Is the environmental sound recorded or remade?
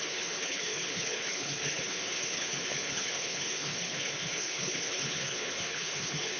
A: remade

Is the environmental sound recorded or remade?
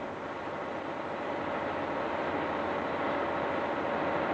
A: recorded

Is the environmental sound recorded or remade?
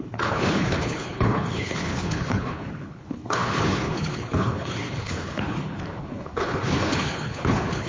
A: remade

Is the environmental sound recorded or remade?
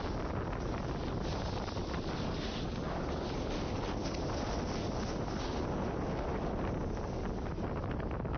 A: recorded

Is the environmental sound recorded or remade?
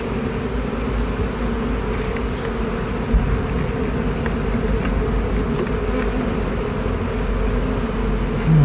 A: recorded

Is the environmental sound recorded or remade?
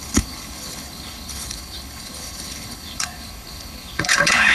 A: remade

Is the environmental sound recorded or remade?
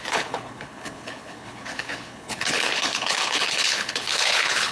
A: remade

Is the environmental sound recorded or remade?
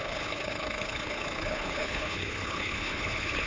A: remade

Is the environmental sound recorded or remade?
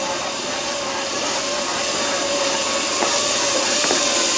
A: recorded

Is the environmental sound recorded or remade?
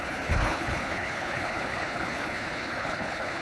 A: remade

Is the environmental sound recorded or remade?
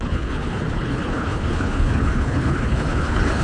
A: remade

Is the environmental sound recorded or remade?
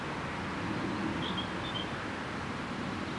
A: recorded